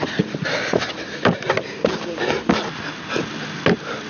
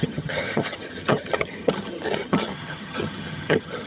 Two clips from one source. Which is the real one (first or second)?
first